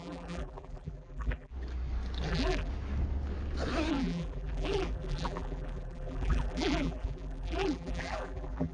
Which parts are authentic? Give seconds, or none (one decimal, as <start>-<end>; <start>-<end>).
1.5-2.3; 2.7-3.9